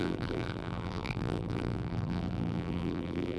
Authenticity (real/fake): fake